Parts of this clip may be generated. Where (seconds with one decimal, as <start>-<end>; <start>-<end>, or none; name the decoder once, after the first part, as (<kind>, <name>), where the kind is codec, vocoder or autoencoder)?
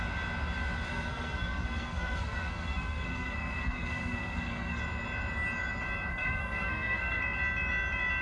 0.9-4.8 (codec, SNAC); 6.1-7.2